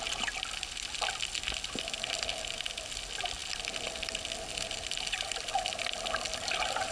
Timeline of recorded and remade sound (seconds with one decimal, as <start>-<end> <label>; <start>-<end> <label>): 0.0-6.9 recorded